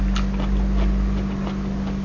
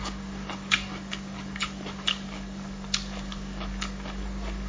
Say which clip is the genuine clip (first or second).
first